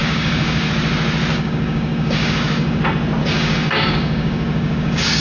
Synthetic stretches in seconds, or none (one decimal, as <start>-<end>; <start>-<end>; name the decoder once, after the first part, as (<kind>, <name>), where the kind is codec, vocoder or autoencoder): 0.0-0.7 (codec, DAC); 1.3-2.8; 3.2-5.2